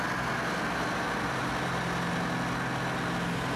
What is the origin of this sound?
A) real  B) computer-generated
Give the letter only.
A